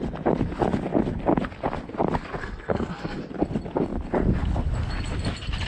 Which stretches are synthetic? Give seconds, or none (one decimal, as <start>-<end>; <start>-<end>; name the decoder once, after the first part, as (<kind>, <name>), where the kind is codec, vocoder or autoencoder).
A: 2.4-3.2 (codec, SNAC)